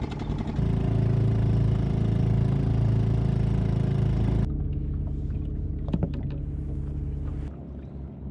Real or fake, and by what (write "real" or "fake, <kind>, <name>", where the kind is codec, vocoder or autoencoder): real